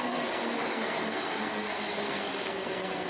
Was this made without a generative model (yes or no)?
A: no